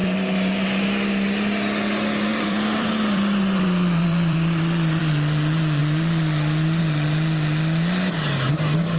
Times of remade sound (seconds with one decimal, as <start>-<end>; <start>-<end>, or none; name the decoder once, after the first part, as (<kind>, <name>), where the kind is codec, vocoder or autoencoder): 0.0-1.1 (vocoder, BigVGAN v2); 2.3-5.0; 5.8-6.8